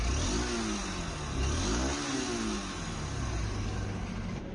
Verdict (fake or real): real